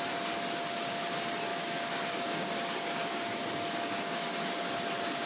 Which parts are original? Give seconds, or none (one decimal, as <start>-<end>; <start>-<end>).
0.0-1.5; 4.7-5.3